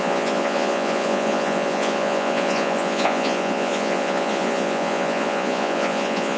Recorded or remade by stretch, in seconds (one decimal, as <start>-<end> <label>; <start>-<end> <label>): 0.0-6.4 remade